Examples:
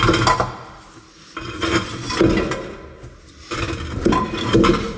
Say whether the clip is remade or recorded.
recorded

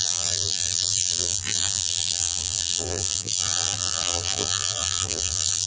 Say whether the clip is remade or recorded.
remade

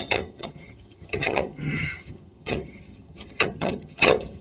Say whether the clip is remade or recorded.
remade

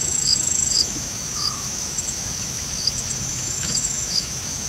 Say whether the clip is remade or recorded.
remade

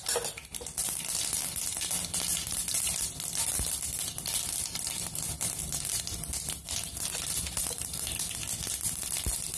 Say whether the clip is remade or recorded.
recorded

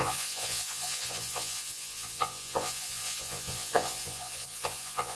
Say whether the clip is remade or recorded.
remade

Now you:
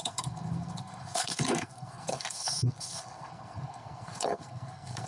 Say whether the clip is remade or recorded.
remade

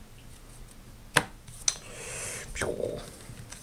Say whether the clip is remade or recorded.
recorded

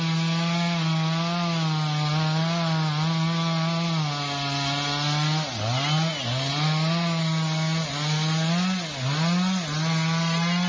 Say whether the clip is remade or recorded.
recorded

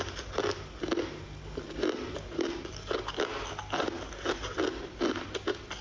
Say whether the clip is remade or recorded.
recorded